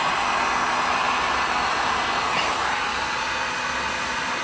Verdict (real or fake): real